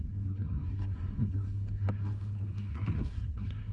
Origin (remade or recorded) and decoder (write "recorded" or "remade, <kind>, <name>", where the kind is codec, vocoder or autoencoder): remade, codec, SNAC